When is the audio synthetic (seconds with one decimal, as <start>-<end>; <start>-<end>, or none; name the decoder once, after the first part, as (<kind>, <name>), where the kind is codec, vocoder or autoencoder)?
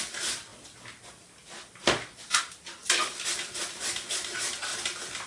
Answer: none